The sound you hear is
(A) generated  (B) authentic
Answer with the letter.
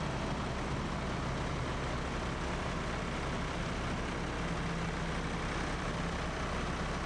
B